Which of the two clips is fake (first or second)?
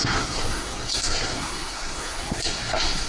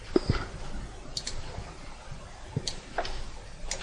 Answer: first